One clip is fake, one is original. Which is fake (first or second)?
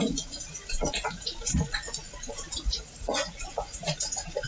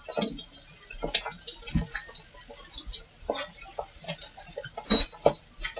first